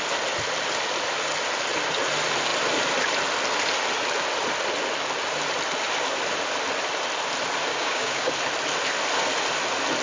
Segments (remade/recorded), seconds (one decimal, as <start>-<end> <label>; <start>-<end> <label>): 0.0-7.7 recorded; 7.7-8.3 remade; 8.3-10.0 recorded